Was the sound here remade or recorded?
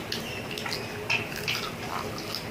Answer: recorded